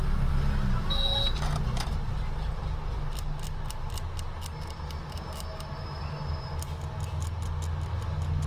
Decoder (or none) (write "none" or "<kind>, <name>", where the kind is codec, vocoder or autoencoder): none